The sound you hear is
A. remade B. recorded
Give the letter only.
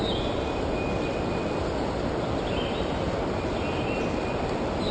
B